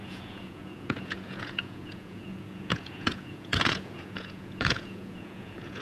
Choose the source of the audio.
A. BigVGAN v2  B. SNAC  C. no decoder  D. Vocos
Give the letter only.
D